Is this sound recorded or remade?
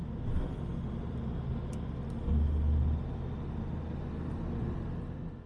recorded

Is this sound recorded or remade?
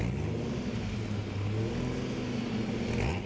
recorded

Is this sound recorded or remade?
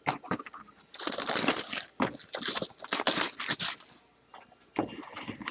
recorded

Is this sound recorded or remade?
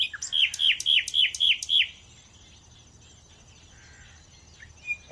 recorded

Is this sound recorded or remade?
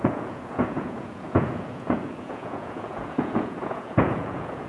remade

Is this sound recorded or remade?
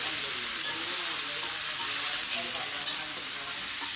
recorded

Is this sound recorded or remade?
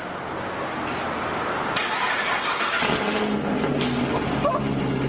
recorded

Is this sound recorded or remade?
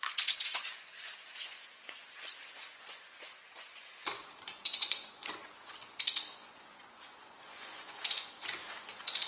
remade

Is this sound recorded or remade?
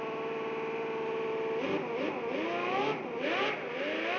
recorded